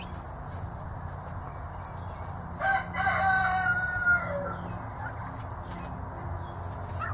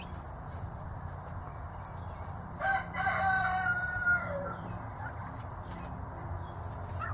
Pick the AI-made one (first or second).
second